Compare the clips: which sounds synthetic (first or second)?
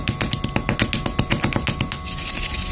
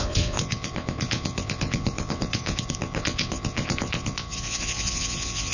second